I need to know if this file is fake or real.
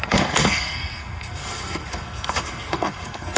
fake